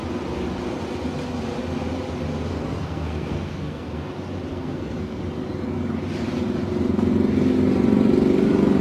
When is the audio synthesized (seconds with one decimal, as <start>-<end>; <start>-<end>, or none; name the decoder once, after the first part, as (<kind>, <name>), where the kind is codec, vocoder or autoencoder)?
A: 2.5-4.1 (codec, SNAC); 4.5-5.2